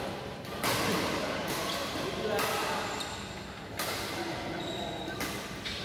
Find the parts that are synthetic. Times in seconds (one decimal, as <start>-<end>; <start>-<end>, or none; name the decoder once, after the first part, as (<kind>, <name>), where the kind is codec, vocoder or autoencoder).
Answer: 1.8-3.9 (vocoder, BigVGAN v2); 4.6-5.8